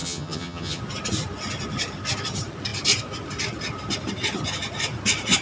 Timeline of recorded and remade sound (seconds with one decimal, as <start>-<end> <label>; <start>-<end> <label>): 0.0-0.8 remade; 0.8-5.4 recorded